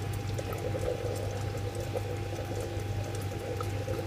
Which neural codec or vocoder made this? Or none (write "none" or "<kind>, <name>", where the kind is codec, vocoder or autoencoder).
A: none